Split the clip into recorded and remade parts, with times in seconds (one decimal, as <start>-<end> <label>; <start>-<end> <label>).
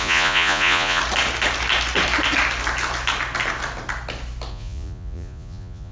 0.0-1.0 remade; 1.0-4.5 recorded; 4.5-5.9 remade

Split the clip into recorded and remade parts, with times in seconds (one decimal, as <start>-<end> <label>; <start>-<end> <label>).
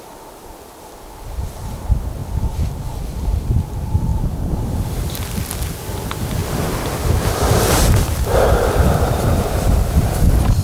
0.0-4.1 recorded; 4.1-5.7 remade; 5.7-6.4 recorded; 6.4-8.2 remade; 8.2-10.6 recorded